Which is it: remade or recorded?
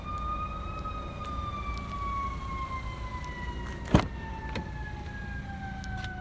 recorded